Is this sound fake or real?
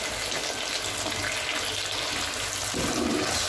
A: real